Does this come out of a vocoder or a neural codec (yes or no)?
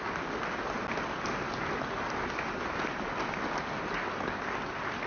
no